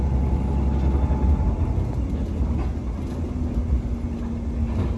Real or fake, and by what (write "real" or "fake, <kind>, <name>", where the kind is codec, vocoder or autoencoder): real